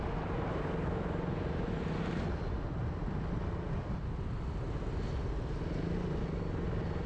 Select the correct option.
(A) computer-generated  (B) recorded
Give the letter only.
B